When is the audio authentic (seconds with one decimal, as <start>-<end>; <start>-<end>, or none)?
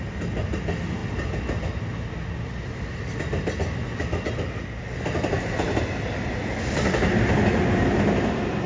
0.0-8.7